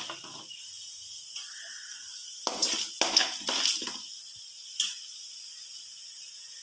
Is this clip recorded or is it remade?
recorded